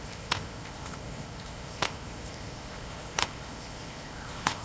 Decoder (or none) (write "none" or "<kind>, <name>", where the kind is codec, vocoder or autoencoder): codec, ZipCodec